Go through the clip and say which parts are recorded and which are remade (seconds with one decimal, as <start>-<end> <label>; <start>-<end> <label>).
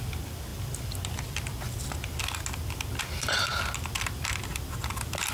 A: 0.0-5.3 recorded